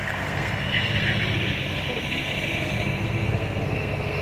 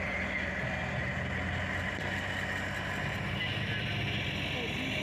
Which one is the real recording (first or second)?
second